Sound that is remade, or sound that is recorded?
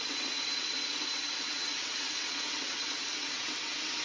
remade